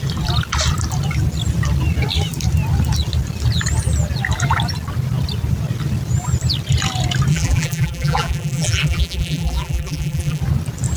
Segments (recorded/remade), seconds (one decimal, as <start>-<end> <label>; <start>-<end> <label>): 0.0-7.3 recorded; 7.3-10.4 remade; 10.4-11.0 recorded